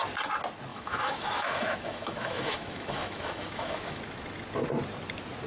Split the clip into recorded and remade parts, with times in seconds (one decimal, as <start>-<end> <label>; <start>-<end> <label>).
0.0-0.7 recorded; 0.7-4.0 remade; 4.0-5.5 recorded